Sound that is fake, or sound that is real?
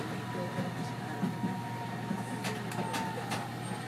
real